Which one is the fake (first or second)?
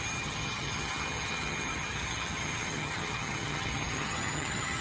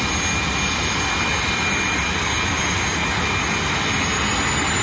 first